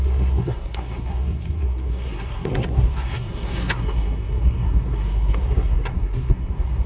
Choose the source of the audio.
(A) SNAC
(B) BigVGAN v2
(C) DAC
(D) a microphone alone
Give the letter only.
A